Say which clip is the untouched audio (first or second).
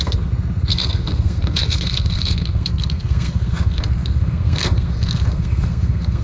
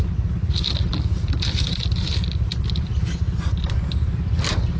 second